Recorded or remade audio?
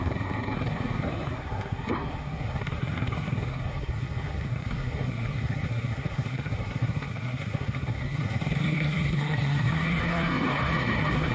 remade